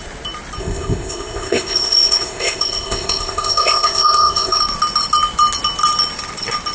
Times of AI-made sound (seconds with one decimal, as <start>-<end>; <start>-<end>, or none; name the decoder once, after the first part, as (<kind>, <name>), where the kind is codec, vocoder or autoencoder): 0.6-4.6 (codec, ZipCodec)